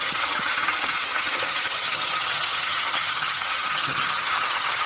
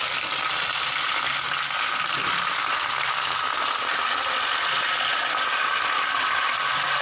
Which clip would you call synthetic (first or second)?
first